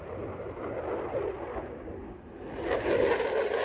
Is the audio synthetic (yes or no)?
no